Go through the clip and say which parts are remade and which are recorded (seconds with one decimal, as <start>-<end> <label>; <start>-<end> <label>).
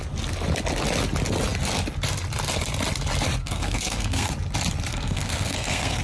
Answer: 0.0-3.4 recorded; 3.4-4.3 remade; 4.3-4.9 recorded; 4.9-6.0 remade